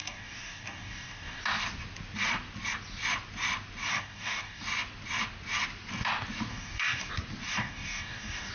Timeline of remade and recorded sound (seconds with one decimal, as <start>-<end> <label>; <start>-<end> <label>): 0.0-1.4 remade; 1.4-3.9 recorded; 3.9-4.6 remade; 4.6-6.5 recorded; 6.5-7.1 remade; 7.1-7.5 recorded; 7.5-8.5 remade